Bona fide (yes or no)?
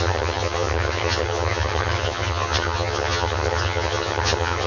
no